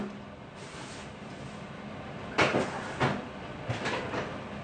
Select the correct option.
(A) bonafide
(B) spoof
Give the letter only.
A